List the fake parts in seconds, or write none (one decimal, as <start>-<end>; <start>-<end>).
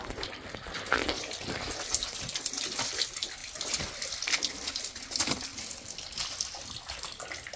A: none